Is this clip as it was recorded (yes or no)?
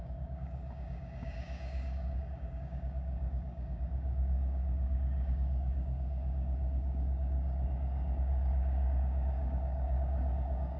no